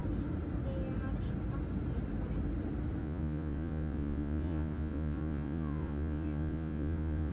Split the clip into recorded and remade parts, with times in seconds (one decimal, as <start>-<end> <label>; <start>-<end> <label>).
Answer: 0.0-3.0 recorded; 3.0-7.3 remade